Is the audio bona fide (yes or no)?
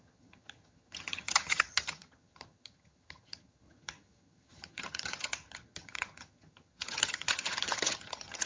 no